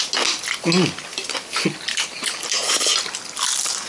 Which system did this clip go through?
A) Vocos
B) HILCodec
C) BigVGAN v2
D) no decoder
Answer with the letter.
D